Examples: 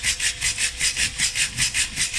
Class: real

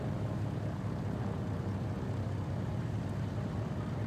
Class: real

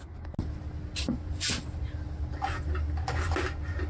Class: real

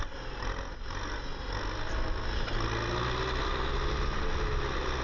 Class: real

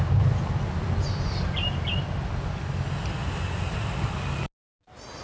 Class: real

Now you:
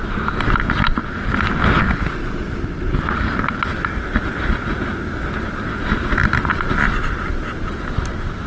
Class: real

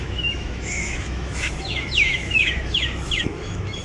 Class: fake